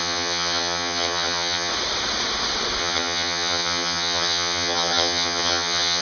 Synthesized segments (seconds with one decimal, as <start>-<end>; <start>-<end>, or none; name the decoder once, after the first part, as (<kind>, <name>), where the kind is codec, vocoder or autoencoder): 0.0-1.7 (vocoder, HiFi-GAN); 2.8-6.0